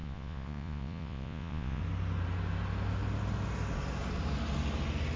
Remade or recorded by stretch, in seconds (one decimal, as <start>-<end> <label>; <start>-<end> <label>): 0.0-1.8 remade; 1.8-5.2 recorded